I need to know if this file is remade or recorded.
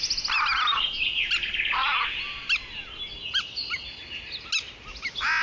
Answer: recorded